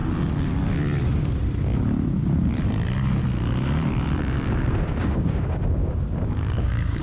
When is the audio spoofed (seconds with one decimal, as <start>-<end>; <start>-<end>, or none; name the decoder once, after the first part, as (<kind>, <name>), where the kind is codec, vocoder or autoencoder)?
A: 4.2-7.0 (codec, DAC)